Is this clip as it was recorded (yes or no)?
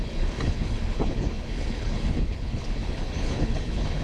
no